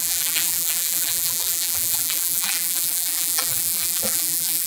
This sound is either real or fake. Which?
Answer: fake